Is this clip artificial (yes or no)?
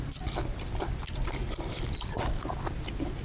no